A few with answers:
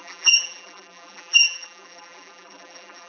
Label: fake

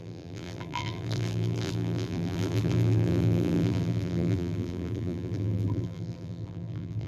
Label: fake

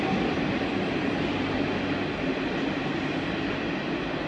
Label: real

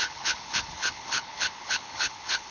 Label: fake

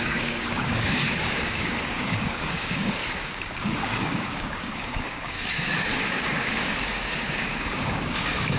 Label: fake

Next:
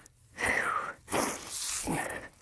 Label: real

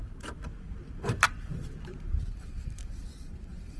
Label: fake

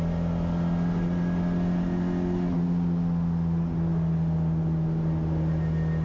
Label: real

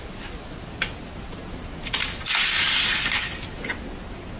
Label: real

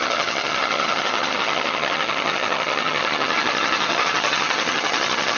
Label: fake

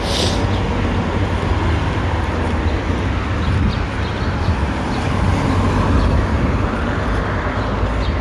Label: real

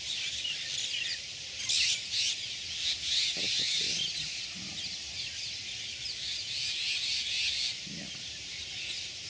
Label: real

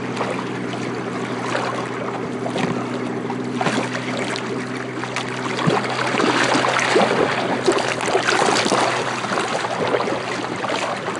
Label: real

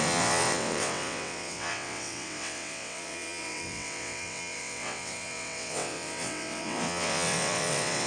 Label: fake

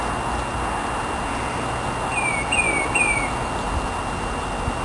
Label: real